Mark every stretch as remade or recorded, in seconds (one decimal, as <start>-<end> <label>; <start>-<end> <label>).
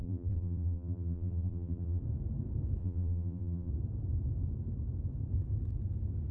0.0-2.0 remade; 2.0-2.8 recorded; 2.8-3.7 remade; 3.7-6.3 recorded